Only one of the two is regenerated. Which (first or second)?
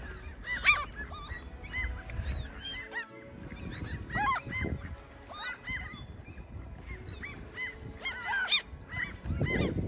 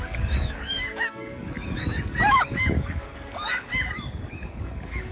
second